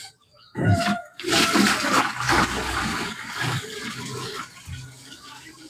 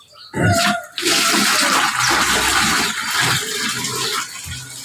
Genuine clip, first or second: second